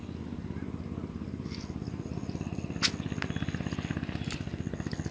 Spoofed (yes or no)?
no